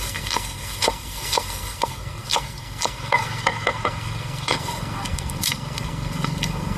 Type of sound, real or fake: fake